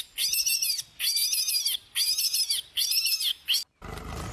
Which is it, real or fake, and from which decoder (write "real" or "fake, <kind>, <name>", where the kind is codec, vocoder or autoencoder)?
real